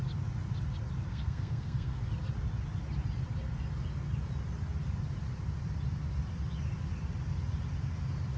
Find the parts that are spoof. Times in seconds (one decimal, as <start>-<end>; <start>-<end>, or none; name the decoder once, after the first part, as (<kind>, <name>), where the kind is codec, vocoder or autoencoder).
1.1-2.0 (codec, SNAC)